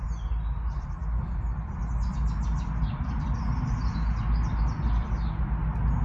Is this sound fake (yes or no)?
no